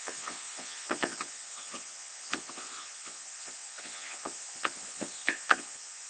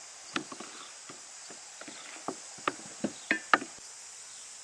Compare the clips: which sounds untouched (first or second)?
second